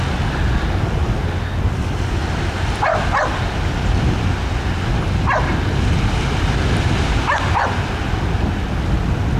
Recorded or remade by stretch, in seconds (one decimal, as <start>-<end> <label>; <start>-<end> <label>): 0.0-9.4 recorded